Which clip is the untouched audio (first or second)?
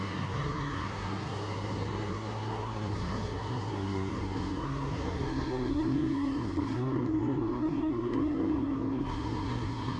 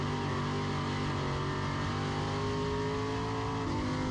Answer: second